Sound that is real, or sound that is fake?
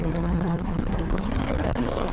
fake